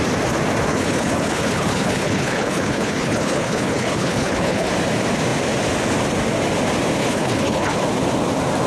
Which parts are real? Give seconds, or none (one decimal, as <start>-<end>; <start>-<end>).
0.0-0.7; 4.7-7.0; 7.8-8.7